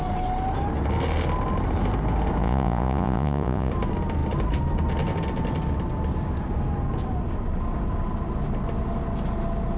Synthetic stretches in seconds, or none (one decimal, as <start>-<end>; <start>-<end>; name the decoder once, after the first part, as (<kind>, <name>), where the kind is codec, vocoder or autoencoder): 2.4-3.7 (vocoder, Vocos)